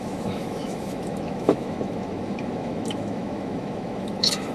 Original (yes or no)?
no